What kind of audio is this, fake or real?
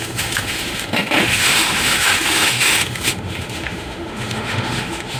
fake